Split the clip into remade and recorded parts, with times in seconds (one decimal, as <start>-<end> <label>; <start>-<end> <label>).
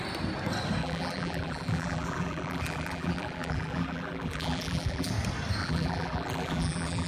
0.0-0.8 recorded; 0.8-5.1 remade; 5.1-5.6 recorded; 5.6-7.1 remade